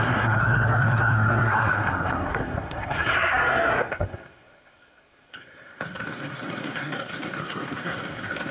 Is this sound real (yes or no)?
no